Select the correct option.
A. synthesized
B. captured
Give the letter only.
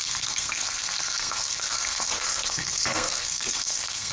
A